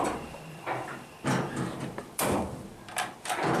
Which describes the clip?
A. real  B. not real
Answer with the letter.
B